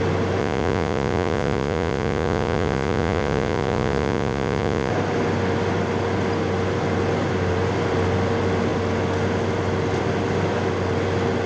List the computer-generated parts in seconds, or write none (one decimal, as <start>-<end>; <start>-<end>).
0.4-4.9